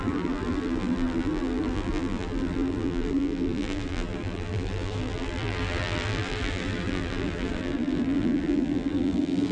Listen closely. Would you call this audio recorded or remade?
remade